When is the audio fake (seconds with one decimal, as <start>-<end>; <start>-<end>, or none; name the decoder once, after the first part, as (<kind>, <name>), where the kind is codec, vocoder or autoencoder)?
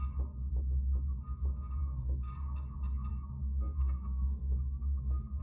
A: 1.8-2.3 (codec, SNAC); 3.1-5.4